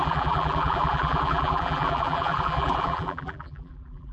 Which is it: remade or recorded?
remade